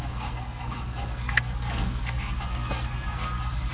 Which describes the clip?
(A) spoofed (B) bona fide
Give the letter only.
A